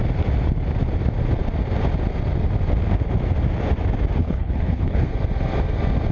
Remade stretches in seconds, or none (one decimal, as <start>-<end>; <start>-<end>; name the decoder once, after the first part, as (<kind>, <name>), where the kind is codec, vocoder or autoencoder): 4.2-5.1 (codec, HILCodec)